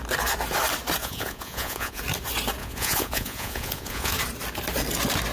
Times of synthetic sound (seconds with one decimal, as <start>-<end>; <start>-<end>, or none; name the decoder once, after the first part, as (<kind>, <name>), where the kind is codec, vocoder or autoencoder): 1.0-2.0 (vocoder, Vocos); 2.6-4.1